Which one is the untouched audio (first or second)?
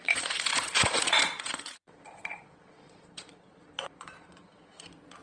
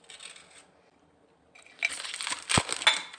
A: second